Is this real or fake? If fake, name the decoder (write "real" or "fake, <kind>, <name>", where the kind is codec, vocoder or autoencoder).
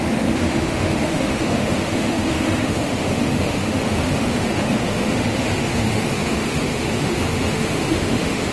fake, autoencoder, DAC-VAE